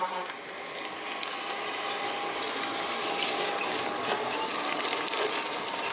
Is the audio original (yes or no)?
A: yes